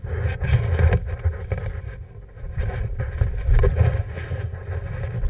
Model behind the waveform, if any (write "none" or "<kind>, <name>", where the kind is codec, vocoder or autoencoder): none